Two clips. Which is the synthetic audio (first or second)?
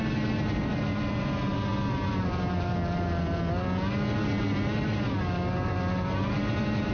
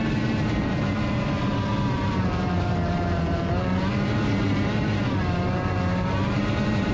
second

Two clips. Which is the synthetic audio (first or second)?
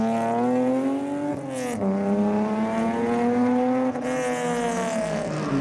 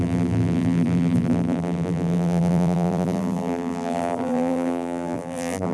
second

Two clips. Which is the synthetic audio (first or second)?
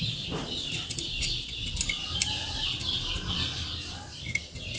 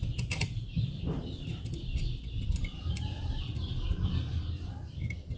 second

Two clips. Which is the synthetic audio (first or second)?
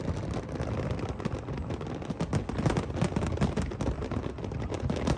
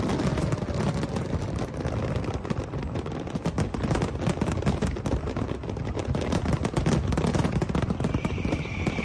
second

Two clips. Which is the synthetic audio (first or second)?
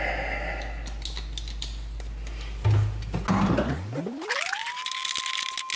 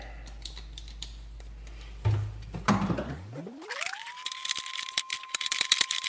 second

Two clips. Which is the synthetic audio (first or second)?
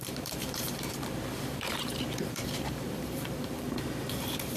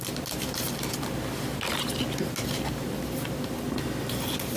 first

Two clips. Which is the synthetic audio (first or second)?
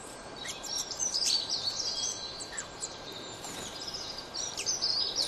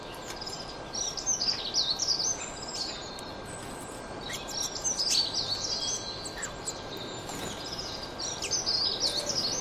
first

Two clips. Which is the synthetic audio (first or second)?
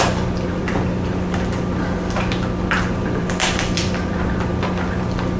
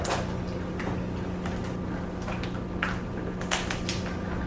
first